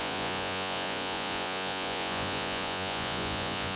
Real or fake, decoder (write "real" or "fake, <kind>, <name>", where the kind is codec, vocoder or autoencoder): fake, vocoder, Vocos